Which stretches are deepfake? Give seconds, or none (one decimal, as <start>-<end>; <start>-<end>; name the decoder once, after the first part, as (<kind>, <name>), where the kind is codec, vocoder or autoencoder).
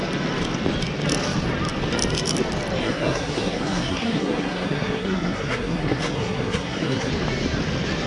2.8-7.1 (codec, SNAC)